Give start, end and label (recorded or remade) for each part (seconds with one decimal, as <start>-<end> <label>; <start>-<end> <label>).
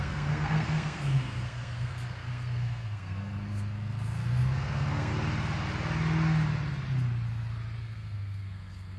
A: 0.0-5.1 remade; 5.1-7.8 recorded; 7.8-9.0 remade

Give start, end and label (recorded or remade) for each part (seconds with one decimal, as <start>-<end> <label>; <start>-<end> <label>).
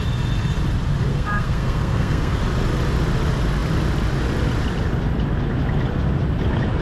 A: 0.0-1.1 recorded; 1.1-2.4 remade; 2.4-6.8 recorded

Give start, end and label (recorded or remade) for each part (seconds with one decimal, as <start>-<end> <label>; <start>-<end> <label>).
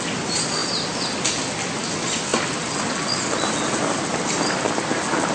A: 0.0-5.3 recorded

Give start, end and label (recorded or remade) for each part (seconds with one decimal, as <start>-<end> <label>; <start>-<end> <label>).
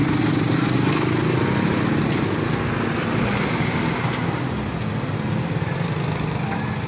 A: 0.0-6.9 recorded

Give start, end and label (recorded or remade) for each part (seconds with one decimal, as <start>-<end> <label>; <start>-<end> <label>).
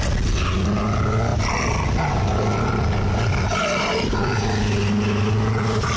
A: 0.0-6.0 recorded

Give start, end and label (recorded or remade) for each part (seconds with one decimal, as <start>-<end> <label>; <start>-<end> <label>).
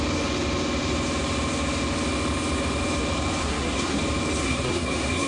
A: 0.0-3.4 recorded; 3.4-4.0 remade; 4.0-4.4 recorded; 4.4-5.3 remade